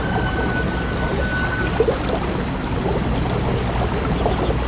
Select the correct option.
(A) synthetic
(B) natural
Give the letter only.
B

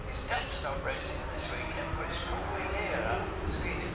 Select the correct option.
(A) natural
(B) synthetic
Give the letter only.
A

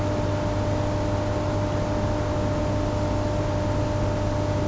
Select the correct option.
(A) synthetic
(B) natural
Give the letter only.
B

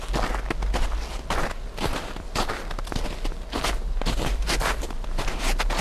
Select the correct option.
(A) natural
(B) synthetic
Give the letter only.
A